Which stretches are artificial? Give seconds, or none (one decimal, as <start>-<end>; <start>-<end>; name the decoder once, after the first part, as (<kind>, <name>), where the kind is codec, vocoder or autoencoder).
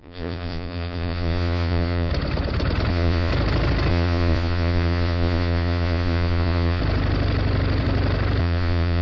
0.0-2.1 (vocoder, Vocos); 2.9-3.3; 3.9-6.8; 8.4-9.0